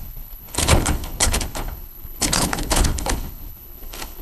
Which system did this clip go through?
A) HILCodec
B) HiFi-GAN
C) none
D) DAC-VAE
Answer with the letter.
A